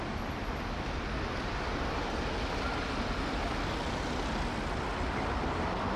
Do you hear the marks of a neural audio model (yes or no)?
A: no